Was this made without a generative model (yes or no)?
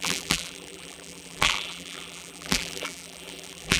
no